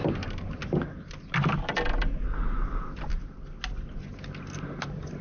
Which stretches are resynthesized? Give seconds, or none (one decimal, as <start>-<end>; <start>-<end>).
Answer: none